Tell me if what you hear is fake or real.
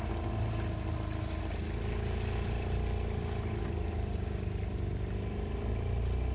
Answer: real